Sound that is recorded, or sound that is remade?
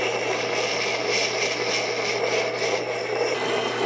recorded